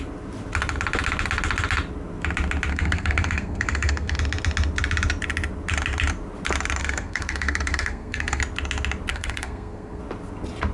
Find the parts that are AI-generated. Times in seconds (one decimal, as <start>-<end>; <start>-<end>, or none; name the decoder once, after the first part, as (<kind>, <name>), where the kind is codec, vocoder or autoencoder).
2.7-4.2 (codec, SNAC); 6.8-8.4; 9.1-10.0